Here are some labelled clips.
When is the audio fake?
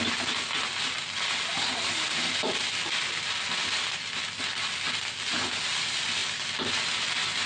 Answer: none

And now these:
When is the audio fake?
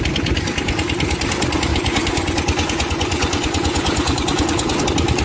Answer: 1.7-4.8 (vocoder, Vocos)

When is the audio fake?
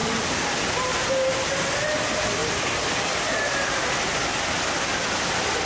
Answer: none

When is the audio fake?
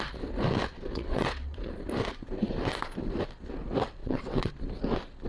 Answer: 0.7-1.7 (vocoder, WaveNeXt); 4.0-4.5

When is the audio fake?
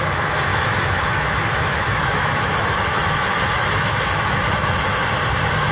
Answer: 0.0-5.0 (autoencoder, DAC-VAE)